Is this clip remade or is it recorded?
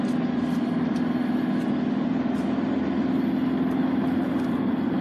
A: recorded